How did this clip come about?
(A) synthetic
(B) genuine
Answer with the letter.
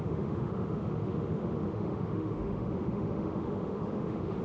A